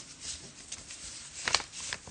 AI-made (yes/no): yes